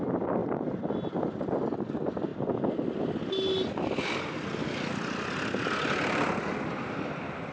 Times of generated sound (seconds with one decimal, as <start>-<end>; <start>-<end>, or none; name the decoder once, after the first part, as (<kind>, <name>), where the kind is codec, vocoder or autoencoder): none